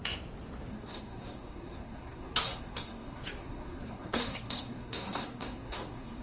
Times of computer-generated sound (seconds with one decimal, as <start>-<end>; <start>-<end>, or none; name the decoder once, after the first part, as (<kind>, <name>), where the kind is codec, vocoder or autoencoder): 0.7-6.2 (codec, SNAC)